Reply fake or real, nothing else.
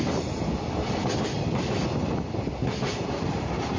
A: real